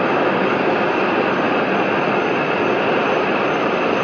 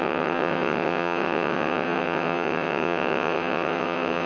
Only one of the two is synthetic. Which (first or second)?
second